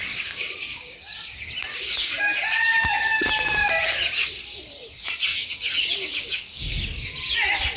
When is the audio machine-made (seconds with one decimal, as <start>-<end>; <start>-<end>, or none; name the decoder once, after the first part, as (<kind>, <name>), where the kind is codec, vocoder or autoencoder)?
0.0-1.2 (codec, DAC); 1.7-2.2; 5.3-6.7

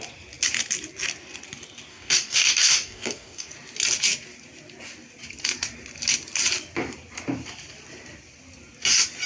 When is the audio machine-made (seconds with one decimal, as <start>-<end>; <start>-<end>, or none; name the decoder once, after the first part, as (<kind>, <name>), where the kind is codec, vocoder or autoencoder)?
1.9-3.5 (codec, DAC)

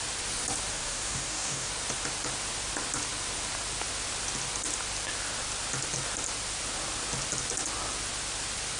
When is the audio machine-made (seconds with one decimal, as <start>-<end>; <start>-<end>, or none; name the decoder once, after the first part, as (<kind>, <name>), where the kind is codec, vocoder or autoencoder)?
0.7-1.7 (codec, DAC)

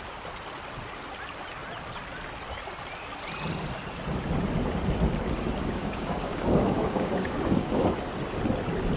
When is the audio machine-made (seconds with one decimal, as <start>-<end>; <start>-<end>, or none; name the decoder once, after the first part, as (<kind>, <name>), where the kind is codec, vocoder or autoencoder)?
5.6-7.9 (codec, DAC)

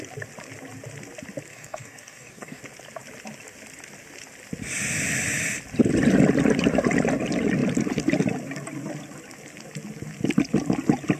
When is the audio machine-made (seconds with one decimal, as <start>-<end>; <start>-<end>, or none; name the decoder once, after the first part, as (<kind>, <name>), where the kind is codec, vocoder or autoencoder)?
1.5-2.6 (codec, DAC)

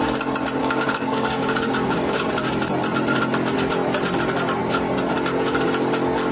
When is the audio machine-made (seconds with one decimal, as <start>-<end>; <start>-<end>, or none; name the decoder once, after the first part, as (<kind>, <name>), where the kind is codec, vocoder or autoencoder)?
0.6-2.3 (codec, DAC)

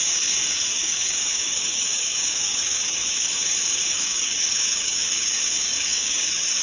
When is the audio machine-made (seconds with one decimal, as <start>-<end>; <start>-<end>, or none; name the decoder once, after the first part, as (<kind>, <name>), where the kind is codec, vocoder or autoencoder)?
0.0-6.6 (codec, DAC)